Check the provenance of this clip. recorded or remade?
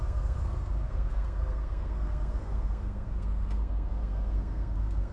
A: remade